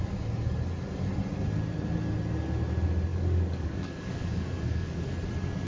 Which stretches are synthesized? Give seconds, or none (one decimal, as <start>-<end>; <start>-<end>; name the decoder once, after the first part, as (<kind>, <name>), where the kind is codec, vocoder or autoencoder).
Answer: 3.1-5.0 (codec, DAC)